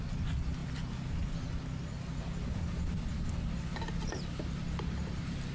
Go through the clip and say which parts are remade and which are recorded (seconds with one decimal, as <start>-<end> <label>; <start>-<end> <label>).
0.0-5.5 recorded

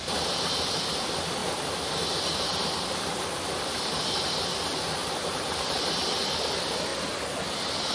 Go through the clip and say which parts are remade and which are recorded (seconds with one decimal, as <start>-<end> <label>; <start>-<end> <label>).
0.0-5.0 remade; 5.0-6.4 recorded; 6.4-7.9 remade

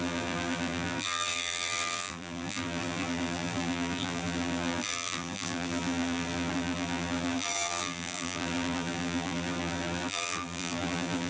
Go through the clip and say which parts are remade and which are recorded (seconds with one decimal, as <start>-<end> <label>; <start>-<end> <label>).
0.0-11.3 remade

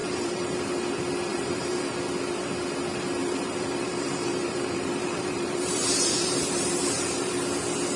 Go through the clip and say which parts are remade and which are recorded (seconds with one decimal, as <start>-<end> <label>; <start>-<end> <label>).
0.0-0.7 remade; 0.7-1.3 recorded; 1.3-1.8 remade; 1.8-3.2 recorded; 3.2-7.3 remade; 7.3-8.0 recorded

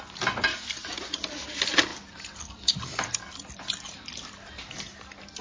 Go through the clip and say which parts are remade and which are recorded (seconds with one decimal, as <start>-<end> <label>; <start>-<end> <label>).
0.0-0.5 recorded; 0.5-1.2 remade; 1.2-1.9 recorded; 1.9-3.6 remade; 3.6-5.4 recorded

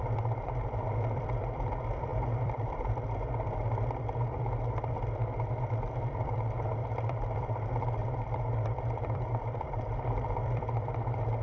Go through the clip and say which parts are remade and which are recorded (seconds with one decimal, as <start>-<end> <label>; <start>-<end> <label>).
0.0-11.4 remade

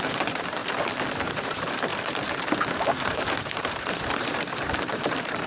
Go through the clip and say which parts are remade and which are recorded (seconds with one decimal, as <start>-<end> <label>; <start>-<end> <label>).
0.0-0.6 remade; 0.6-1.2 recorded; 1.2-1.9 remade; 1.9-2.7 recorded; 2.7-5.5 remade